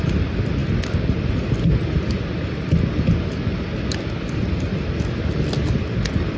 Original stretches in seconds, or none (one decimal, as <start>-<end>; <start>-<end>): 0.0-6.4